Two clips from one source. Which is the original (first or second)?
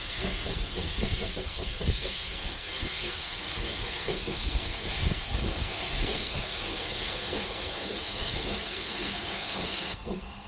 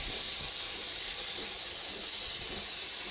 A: second